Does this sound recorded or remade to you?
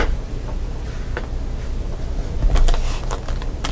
recorded